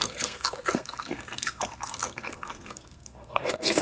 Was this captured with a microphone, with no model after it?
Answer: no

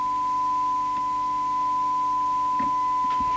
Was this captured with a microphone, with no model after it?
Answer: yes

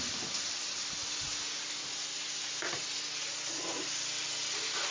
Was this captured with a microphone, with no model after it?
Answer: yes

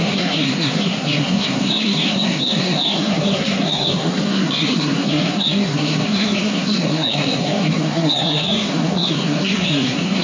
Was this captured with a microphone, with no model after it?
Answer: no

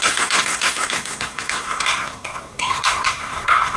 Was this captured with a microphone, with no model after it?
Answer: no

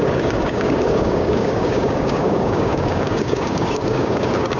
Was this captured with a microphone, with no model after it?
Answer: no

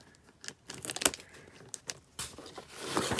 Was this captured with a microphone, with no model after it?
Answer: yes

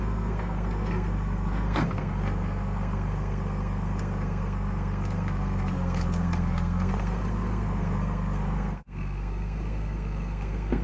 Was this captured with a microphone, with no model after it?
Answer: no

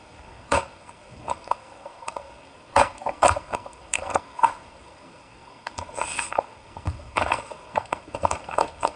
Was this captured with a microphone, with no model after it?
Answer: no